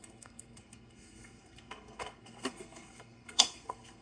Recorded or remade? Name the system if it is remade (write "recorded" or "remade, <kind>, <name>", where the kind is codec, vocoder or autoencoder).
remade, codec, SNAC